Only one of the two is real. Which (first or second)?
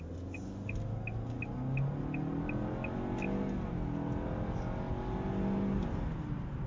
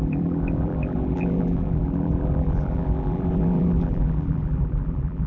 first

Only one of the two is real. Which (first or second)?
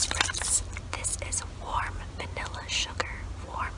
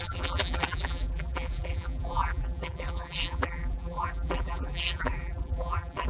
first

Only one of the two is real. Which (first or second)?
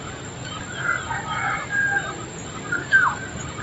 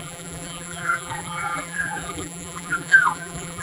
first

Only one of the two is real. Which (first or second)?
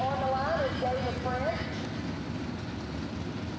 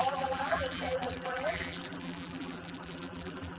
first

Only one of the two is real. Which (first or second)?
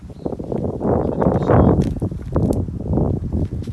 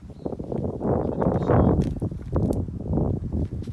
second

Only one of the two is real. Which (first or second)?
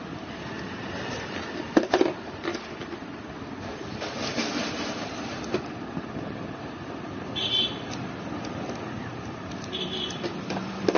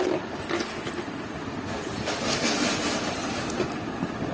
second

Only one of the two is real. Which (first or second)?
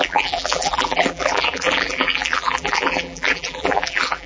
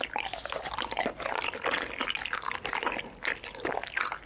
second